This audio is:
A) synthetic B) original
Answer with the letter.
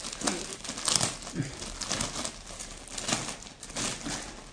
B